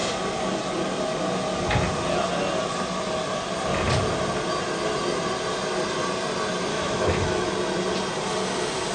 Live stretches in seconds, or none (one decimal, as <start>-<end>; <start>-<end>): 0.0-6.7; 7.5-8.9